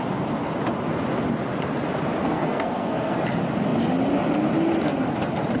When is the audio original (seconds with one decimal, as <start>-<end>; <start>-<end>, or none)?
0.0-2.2; 3.2-5.6